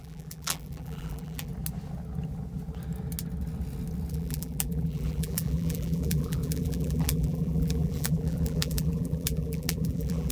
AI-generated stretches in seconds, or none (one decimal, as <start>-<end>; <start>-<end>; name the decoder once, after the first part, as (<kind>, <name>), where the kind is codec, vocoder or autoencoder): 0.0-1.5 (vocoder, BigVGAN v2); 4.1-10.3